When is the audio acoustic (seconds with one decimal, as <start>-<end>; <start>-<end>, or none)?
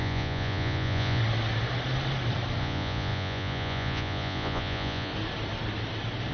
1.2-2.6; 5.1-6.3